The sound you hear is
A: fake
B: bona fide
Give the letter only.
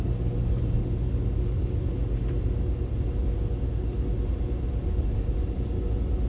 B